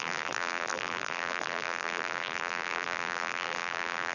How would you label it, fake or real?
fake